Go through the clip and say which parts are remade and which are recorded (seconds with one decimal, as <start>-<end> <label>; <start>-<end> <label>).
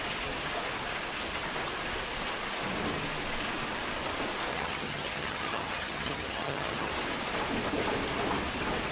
0.0-4.5 recorded; 4.5-6.9 remade; 6.9-8.9 recorded